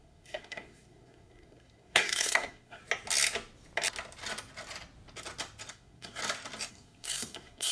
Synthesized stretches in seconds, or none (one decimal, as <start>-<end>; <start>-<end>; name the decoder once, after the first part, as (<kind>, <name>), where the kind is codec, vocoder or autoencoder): 0.0-2.8 (codec, SNAC); 5.7-6.2; 6.7-7.7